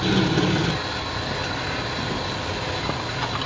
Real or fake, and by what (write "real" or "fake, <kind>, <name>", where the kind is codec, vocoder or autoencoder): real